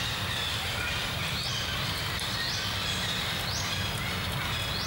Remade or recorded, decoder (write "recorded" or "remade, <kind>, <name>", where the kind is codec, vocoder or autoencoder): recorded